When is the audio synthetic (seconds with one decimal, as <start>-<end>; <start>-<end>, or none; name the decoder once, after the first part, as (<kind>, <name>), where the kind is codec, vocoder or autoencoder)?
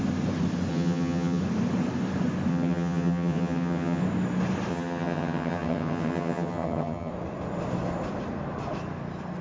0.7-1.4 (vocoder, HiFi-GAN); 2.5-4.0; 4.7-7.1